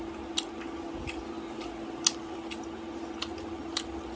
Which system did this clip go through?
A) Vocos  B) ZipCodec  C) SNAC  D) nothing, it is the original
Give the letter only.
D